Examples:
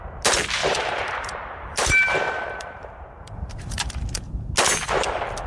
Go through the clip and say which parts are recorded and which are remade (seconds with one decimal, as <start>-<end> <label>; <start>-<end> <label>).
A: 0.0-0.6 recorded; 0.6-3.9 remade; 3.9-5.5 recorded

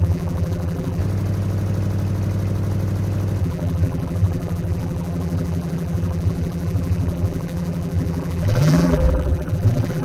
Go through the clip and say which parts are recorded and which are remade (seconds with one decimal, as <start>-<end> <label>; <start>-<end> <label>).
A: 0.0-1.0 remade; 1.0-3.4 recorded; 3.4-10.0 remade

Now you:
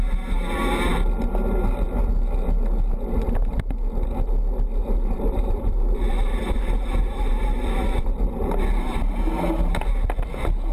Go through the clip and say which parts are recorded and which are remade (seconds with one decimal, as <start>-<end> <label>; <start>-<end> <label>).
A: 0.0-4.8 recorded; 4.8-8.6 remade; 8.6-10.7 recorded